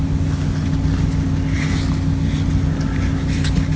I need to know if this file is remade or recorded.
recorded